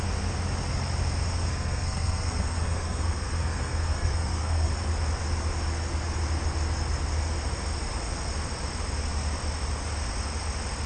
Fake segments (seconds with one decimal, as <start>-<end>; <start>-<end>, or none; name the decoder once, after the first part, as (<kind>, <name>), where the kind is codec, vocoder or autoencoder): 1.4-4.7 (codec, SNAC)

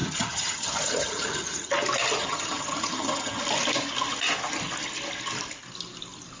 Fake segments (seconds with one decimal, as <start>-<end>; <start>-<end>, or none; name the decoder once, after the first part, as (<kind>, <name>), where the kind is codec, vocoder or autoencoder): 0.0-1.7 (vocoder, HiFi-GAN); 2.2-3.4

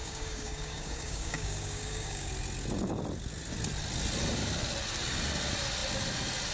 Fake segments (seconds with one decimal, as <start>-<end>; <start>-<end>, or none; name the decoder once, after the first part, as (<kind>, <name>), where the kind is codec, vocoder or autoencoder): 0.0-2.3 (codec, DAC)

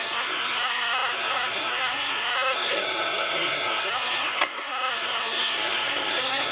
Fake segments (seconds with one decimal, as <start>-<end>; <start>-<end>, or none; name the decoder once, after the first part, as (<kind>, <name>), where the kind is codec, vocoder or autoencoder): 0.0-6.5 (codec, SNAC)

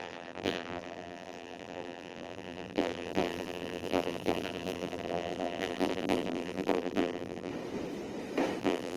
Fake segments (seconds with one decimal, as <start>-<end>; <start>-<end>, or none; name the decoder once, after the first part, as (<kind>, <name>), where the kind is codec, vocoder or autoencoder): 0.0-7.5 (vocoder, BigVGAN v2); 8.6-9.0